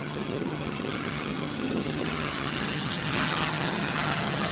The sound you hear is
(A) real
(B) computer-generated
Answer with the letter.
B